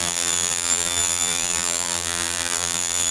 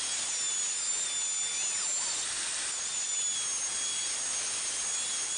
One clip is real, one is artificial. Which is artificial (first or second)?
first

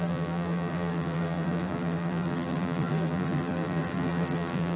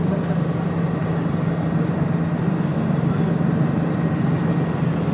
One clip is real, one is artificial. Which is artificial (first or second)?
first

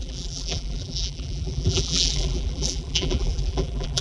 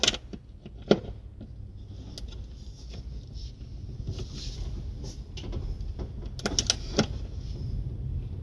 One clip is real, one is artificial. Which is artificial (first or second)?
first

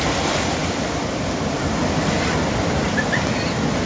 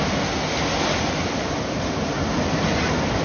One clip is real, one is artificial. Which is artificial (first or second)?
first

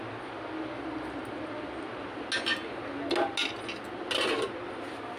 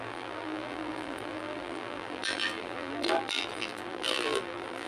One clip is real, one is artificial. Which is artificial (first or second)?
second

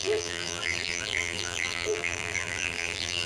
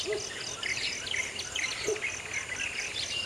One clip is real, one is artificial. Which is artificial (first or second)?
first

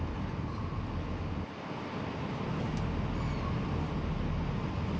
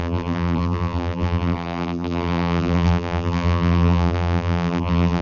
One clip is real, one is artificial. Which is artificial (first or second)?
second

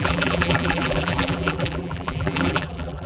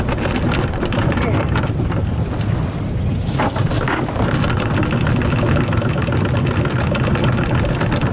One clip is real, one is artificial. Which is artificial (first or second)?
first